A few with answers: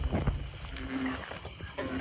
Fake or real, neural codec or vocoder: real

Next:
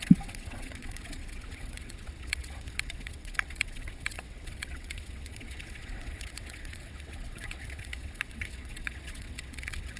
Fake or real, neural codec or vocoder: fake, vocoder, WaveNeXt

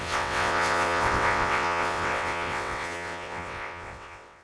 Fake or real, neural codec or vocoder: fake, vocoder, WaveNeXt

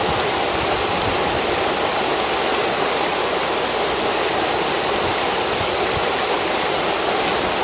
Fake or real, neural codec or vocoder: real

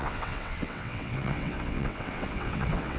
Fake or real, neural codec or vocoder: fake, vocoder, WaveNeXt